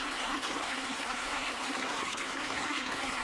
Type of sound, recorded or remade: remade